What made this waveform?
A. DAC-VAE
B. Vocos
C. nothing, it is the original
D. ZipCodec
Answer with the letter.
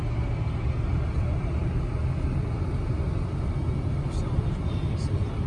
C